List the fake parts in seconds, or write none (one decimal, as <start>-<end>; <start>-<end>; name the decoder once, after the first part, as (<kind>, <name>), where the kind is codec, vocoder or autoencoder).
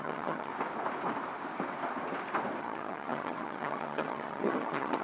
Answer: 0.0-0.5 (vocoder, HiFi-GAN); 2.6-5.0